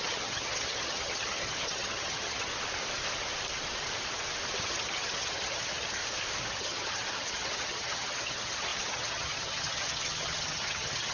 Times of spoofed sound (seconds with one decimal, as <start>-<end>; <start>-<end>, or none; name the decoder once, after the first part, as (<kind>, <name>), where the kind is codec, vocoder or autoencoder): 0.0-2.5 (vocoder, HiFi-GAN); 4.6-6.0; 6.5-11.1